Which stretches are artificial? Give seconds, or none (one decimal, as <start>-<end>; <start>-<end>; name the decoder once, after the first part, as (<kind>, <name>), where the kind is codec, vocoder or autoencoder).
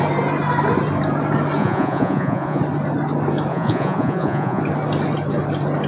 1.6-2.6 (vocoder, Vocos); 3.5-4.6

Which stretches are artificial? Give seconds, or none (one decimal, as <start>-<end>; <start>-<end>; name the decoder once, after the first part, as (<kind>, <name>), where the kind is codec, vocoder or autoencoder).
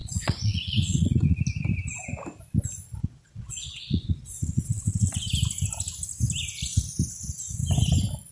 0.0-1.4 (vocoder, Vocos); 3.0-5.3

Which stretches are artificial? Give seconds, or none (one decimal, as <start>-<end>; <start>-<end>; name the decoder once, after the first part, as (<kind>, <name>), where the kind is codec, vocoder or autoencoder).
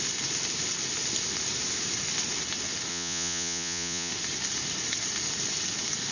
2.9-4.1 (vocoder, Vocos)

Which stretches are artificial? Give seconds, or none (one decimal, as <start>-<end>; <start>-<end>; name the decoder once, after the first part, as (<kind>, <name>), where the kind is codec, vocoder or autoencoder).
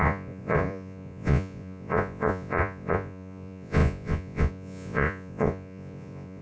0.0-6.4 (vocoder, Vocos)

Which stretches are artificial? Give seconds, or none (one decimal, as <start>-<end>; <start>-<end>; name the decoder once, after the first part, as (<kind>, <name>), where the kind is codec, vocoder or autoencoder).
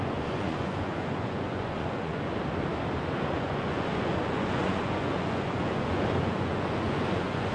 0.0-2.3 (vocoder, Vocos); 3.3-7.5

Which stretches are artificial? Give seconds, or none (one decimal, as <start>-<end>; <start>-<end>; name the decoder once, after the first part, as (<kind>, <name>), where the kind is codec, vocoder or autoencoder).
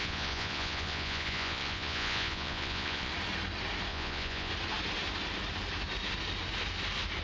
0.0-3.1 (vocoder, Vocos); 3.9-4.5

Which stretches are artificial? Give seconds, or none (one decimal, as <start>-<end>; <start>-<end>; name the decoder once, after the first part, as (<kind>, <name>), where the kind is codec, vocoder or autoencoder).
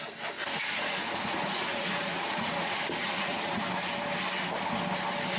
0.4-3.6 (vocoder, Vocos)